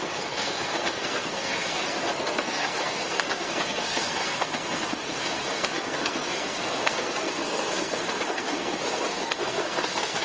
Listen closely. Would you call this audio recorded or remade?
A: remade